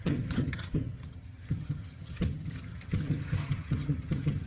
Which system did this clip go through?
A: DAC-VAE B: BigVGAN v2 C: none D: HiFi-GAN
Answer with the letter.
D